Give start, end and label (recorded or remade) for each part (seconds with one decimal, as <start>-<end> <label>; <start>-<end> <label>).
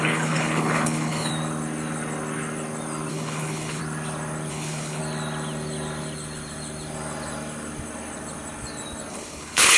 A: 0.0-1.3 remade; 1.3-3.1 recorded; 3.1-3.8 remade; 3.8-4.5 recorded; 4.5-5.0 remade; 5.0-9.1 recorded; 9.1-9.8 remade